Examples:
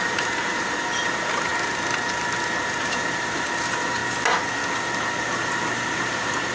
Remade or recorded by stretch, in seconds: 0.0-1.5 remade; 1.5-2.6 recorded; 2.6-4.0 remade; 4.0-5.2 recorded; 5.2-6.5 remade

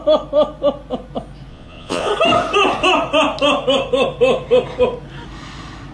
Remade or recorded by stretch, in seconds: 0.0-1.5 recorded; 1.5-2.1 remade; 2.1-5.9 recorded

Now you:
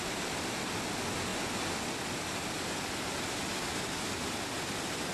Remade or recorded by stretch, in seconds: 0.0-5.1 recorded